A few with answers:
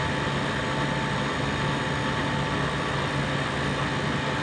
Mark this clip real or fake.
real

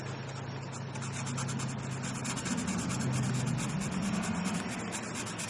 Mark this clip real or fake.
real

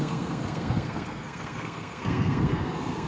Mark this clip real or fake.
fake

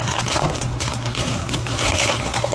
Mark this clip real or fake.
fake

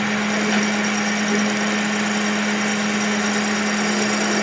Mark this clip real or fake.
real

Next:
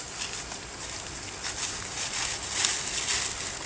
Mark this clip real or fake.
real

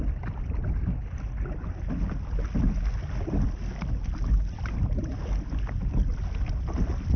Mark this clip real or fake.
real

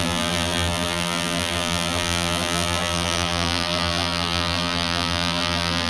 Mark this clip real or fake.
fake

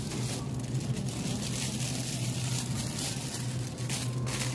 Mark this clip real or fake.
real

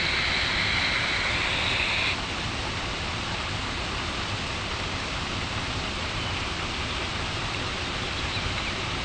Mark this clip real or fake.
real